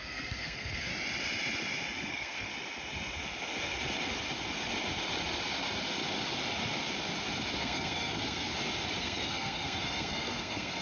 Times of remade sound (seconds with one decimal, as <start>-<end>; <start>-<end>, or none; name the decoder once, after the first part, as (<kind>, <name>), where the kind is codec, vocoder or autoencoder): 0.0-0.9 (codec, SNAC); 2.1-2.5; 7.6-8.5; 9.0-10.8